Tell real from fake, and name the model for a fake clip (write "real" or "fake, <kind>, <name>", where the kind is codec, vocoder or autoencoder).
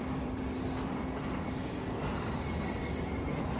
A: fake, vocoder, BigVGAN v2